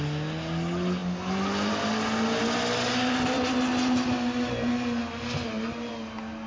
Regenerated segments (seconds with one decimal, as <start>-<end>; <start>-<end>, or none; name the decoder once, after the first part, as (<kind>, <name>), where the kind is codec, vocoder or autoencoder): none